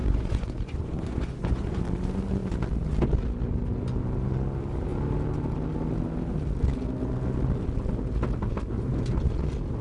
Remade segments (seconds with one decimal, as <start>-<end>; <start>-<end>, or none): 0.0-1.8